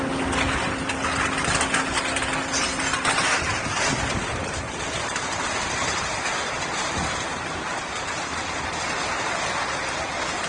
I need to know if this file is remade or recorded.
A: recorded